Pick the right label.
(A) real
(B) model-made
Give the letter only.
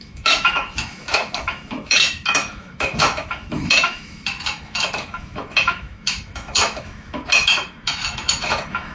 B